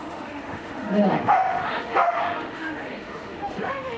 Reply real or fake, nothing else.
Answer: fake